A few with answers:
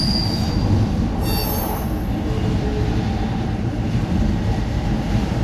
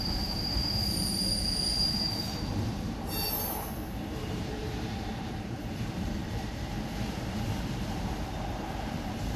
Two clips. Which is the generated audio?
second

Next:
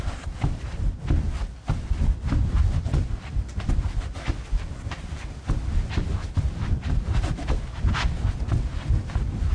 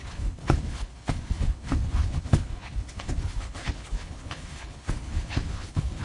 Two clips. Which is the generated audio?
second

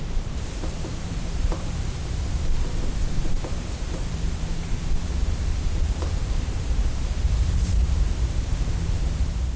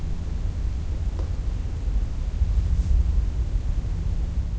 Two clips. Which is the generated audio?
first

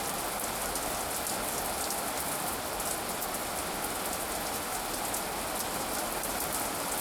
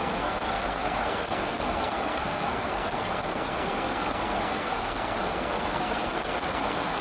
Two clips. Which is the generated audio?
second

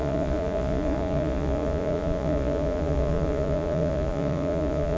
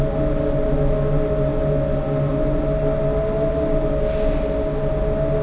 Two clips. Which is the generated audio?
first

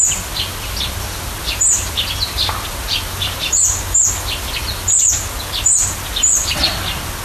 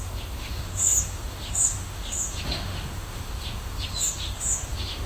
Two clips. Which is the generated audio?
second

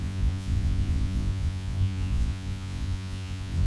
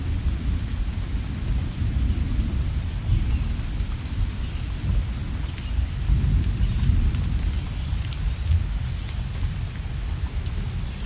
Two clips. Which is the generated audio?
first